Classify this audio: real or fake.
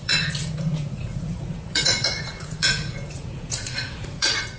fake